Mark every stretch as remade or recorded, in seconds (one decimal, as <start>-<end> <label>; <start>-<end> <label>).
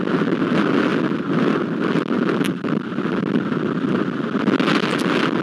0.0-5.4 recorded